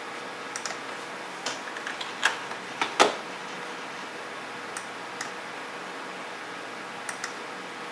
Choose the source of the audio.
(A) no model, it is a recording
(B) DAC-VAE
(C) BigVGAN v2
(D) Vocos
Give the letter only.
A